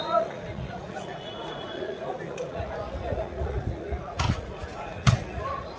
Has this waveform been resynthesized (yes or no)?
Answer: yes